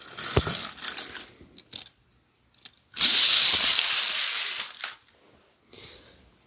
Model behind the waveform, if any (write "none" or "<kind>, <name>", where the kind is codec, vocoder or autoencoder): none